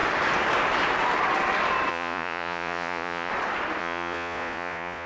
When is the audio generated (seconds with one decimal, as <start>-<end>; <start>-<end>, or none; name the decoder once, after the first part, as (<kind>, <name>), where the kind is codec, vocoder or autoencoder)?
1.9-3.3 (vocoder, Vocos); 3.8-5.1